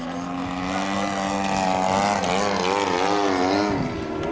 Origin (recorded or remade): recorded